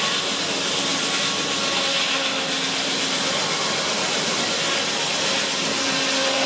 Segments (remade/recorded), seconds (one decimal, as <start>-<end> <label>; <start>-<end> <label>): 0.0-6.5 recorded